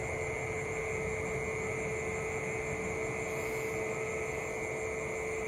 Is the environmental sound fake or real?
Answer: real